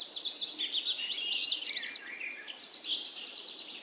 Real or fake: real